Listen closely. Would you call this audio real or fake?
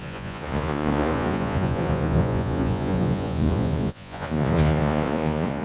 fake